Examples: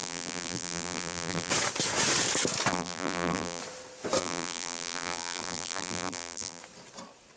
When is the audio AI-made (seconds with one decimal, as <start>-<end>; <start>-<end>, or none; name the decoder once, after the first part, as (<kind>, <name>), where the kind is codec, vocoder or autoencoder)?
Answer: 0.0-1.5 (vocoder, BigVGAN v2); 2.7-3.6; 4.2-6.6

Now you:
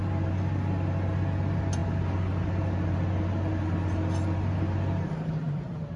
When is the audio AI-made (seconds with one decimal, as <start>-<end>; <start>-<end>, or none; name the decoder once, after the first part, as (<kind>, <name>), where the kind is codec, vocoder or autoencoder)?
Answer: none

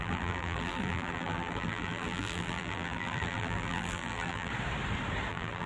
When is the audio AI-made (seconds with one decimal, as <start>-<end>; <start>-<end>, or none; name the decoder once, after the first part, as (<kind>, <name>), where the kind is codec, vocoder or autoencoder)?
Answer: 0.0-4.5 (vocoder, BigVGAN v2); 5.3-5.7

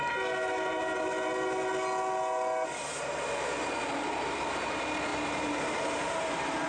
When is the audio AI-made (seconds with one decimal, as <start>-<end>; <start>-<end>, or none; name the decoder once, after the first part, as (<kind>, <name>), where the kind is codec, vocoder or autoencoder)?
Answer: 5.1-6.7 (vocoder, BigVGAN v2)

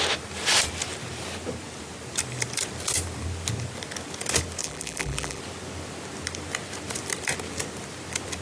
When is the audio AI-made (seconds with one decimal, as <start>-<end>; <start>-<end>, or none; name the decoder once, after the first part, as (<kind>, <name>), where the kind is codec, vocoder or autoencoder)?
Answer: 4.6-5.4 (vocoder, BigVGAN v2)

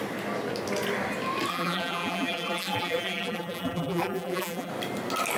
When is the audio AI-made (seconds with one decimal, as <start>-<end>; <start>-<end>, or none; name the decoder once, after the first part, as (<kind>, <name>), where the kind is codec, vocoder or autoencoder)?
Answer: 1.5-4.7 (vocoder, BigVGAN v2)

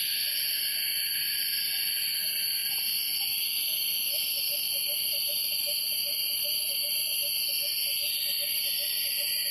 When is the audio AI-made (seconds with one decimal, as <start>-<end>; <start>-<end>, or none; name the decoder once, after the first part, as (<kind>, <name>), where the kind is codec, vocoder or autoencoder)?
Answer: 2.6-3.2 (vocoder, BigVGAN v2); 5.6-6.6